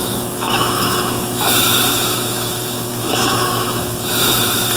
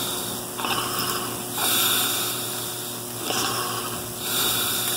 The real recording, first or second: second